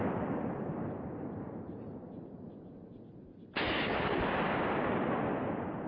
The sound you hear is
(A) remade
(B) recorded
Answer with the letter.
B